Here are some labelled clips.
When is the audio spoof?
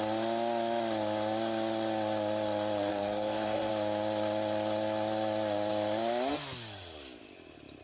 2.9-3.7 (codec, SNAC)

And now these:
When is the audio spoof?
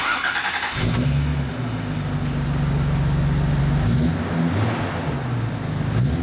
none